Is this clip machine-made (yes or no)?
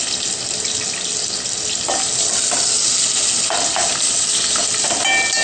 no